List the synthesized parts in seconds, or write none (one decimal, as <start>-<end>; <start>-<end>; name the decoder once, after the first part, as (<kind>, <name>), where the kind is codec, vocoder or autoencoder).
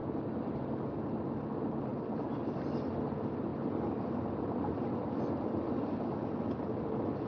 0.0-0.5 (vocoder, BigVGAN v2); 3.5-5.7